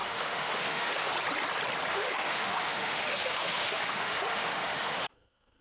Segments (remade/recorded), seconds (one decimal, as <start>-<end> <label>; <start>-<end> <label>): 0.0-1.1 remade; 1.1-1.9 recorded; 1.9-5.6 remade